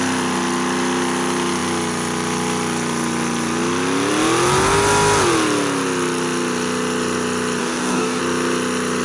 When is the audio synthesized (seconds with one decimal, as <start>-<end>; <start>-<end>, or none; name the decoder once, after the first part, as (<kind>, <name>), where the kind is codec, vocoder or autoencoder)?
7.6-8.2 (codec, DAC)